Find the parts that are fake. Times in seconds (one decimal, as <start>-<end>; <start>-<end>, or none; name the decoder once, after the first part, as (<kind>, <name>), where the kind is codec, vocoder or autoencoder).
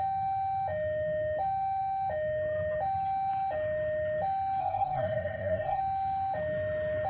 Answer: 4.6-5.8 (codec, SNAC)